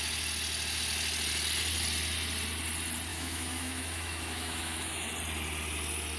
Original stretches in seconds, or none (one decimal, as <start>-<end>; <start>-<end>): 0.0-3.1; 5.1-6.2